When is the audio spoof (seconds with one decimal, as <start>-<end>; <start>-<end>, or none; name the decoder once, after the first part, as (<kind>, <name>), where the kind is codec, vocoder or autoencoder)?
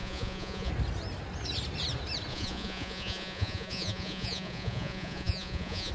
0.0-0.7 (vocoder, Vocos); 2.3-5.9